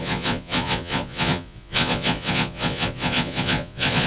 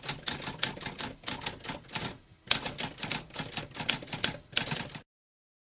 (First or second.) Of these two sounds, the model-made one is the first